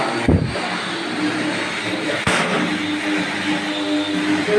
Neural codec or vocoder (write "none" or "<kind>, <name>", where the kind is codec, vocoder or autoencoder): none